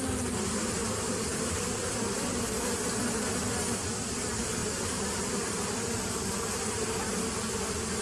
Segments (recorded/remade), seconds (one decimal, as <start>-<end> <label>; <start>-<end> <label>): 0.0-0.8 recorded; 0.8-1.9 remade; 1.9-4.6 recorded; 4.6-6.4 remade; 6.4-8.0 recorded